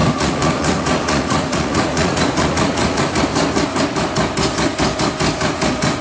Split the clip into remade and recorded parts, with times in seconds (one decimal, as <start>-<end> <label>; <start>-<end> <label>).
0.0-3.0 remade; 3.0-6.0 recorded